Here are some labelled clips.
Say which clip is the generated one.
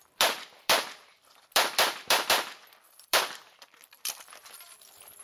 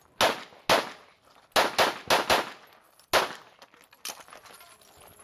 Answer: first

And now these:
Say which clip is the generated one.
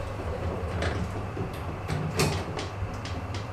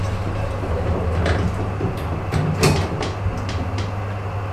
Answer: first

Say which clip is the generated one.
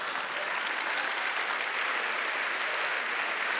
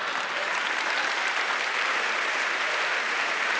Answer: second